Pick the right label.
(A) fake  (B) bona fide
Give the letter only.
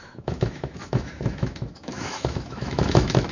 A